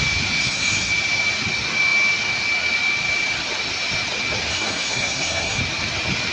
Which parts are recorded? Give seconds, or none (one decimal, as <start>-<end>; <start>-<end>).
0.0-0.4; 0.9-4.5; 5.6-6.3